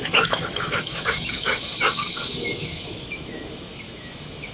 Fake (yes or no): yes